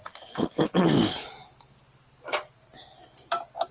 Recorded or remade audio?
recorded